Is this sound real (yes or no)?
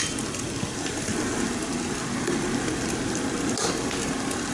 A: yes